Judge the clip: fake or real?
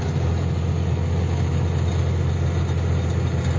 real